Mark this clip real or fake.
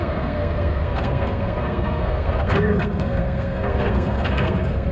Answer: fake